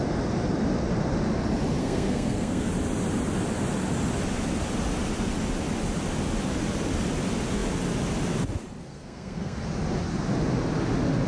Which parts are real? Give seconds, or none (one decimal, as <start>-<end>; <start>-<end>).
0.0-1.8; 2.7-8.8; 9.6-11.3